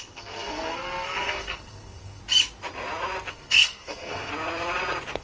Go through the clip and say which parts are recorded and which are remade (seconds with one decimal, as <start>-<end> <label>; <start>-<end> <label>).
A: 0.0-2.2 remade; 2.2-3.3 recorded; 3.3-4.3 remade; 4.3-5.2 recorded